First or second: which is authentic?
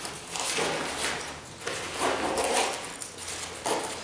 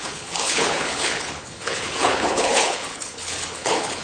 first